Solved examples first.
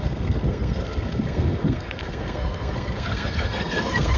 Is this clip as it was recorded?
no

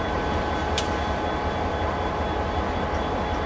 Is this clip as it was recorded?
yes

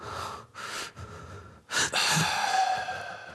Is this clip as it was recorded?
yes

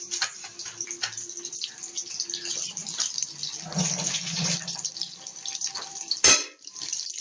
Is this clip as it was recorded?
yes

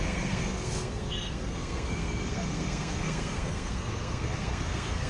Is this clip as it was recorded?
no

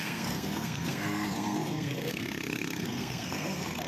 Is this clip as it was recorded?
no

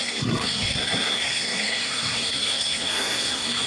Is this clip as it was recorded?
no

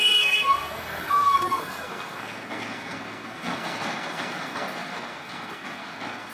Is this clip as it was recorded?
no